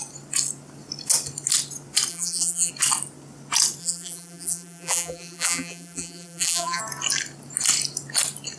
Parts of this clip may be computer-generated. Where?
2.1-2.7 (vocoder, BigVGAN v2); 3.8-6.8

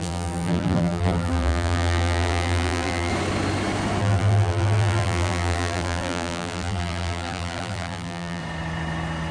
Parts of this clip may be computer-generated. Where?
0.0-3.1 (vocoder, BigVGAN v2); 4.0-8.4

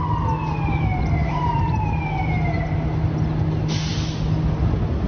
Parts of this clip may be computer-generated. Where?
0.9-2.6 (vocoder, BigVGAN v2)

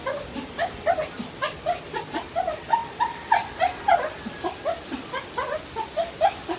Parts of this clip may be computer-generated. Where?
none

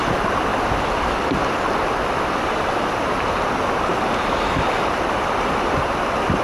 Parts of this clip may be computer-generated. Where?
none

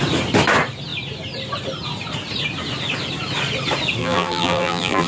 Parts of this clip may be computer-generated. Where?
4.0-5.1 (vocoder, BigVGAN v2)